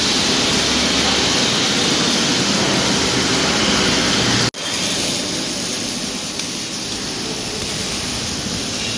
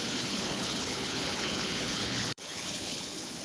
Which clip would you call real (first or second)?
first